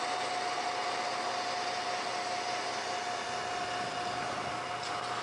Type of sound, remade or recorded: recorded